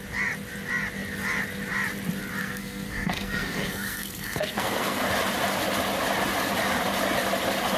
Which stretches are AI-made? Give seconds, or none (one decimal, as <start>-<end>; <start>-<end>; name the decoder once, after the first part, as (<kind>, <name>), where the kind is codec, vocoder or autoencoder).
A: 2.4-5.0 (codec, SNAC)